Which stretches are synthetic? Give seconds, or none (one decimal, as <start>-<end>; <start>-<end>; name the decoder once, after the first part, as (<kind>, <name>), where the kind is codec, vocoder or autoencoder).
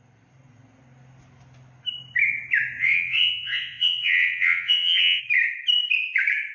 2.8-5.2 (vocoder, WaveNeXt)